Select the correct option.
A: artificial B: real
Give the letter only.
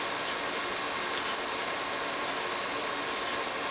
B